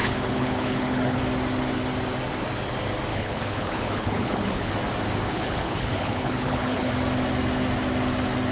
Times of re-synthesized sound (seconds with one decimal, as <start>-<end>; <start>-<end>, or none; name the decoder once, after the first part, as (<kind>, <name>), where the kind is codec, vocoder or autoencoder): 0.0-1.2 (codec, HILCodec); 3.1-4.7; 5.3-6.9